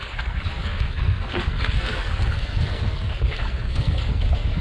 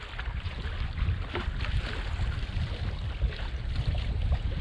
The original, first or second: second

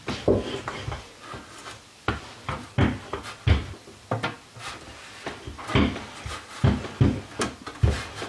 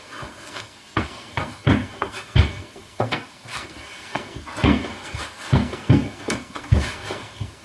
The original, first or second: first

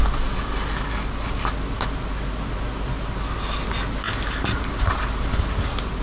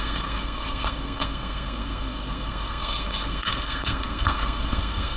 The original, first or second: first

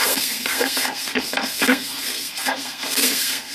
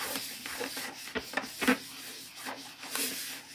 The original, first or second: second